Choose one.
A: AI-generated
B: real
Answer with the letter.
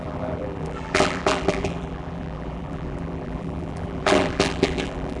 A